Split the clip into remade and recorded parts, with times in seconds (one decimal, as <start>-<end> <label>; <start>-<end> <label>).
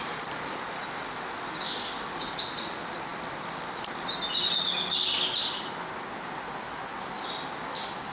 0.0-8.1 recorded